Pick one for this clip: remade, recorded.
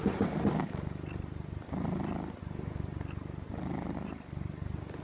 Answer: recorded